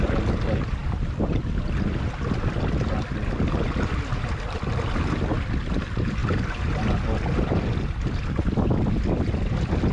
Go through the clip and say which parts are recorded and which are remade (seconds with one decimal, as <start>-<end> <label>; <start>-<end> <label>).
0.0-6.2 recorded; 6.2-6.8 remade; 6.8-9.9 recorded